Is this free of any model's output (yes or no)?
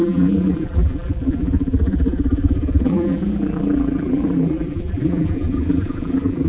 no